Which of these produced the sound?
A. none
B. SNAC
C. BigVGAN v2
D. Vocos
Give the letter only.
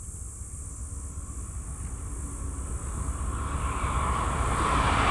A